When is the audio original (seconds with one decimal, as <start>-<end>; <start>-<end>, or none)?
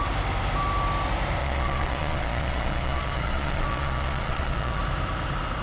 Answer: 0.0-1.4; 4.8-5.6